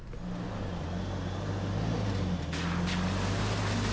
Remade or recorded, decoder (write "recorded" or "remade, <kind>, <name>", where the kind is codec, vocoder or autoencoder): recorded